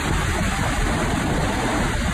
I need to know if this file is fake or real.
real